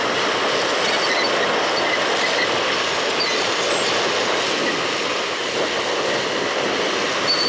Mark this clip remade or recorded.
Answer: recorded